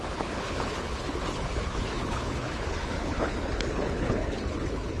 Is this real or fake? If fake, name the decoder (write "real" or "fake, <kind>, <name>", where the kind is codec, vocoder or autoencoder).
fake, codec, HILCodec